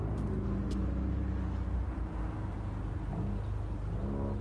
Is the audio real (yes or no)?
yes